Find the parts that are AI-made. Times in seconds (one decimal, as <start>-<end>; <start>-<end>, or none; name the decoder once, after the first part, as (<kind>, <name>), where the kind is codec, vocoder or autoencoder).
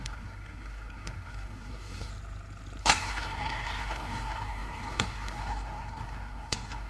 0.0-2.1 (codec, SNAC); 2.8-6.9